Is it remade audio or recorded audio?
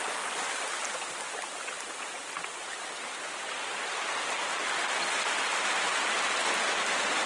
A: recorded